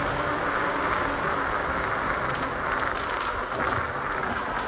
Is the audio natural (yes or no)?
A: yes